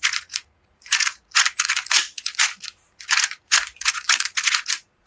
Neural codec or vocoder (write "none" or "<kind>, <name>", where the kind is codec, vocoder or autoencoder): vocoder, Vocos